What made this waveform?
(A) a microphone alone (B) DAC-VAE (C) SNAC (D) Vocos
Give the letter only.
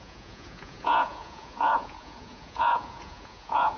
D